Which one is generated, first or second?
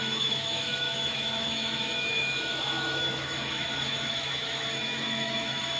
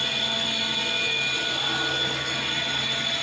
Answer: first